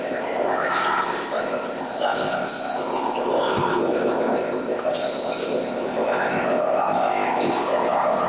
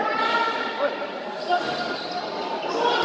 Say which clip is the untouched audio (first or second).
second